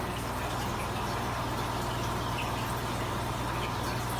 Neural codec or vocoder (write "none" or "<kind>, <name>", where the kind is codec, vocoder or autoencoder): none